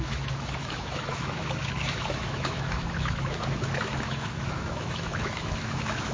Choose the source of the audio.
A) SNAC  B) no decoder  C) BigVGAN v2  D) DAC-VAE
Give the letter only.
D